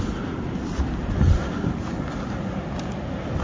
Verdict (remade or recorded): recorded